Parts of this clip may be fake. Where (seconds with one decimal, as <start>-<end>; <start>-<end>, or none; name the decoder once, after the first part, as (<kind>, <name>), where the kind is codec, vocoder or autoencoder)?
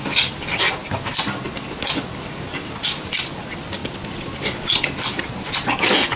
none